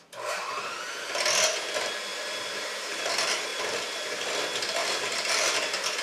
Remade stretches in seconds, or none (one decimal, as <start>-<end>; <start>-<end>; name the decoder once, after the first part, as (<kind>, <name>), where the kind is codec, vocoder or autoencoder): 2.1-3.1 (vocoder, BigVGAN v2); 3.5-4.2; 4.8-5.5